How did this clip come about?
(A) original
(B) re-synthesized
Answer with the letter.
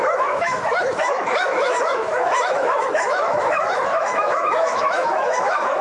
B